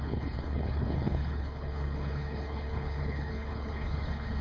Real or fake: fake